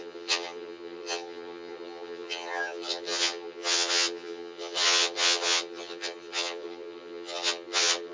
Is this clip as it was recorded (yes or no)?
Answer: no